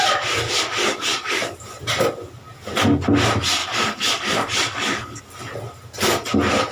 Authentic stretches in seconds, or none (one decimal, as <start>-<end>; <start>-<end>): 0.0-0.9; 1.6-3.6; 5.2-6.7